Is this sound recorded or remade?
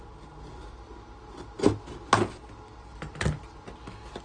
recorded